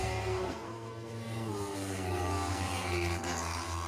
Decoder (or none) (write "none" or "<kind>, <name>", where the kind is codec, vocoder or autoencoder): codec, SNAC